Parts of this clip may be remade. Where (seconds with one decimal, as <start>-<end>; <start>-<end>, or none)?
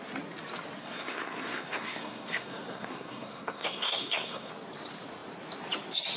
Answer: 0.8-4.5